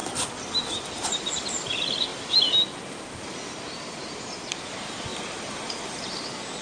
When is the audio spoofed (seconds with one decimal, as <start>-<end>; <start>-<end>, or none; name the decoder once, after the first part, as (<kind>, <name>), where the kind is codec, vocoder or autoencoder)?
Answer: none